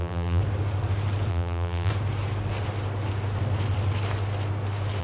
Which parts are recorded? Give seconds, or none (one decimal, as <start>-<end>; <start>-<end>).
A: 0.4-1.3; 1.9-5.0

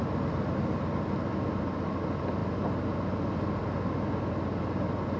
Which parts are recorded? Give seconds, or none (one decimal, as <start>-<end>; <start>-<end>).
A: 0.0-5.2

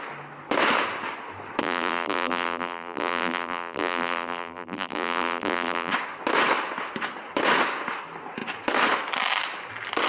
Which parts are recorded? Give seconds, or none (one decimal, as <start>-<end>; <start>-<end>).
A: 0.0-1.6; 5.9-10.1

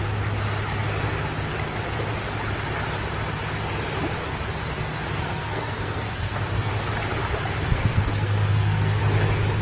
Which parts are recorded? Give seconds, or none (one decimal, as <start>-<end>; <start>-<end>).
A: 0.0-4.6; 6.7-7.7; 9.0-9.6

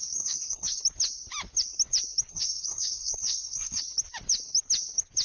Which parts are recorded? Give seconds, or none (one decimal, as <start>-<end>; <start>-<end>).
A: 0.8-2.3; 3.8-5.2